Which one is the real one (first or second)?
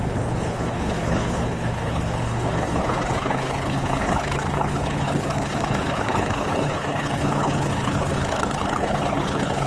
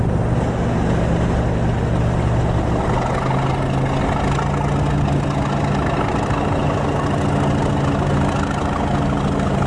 second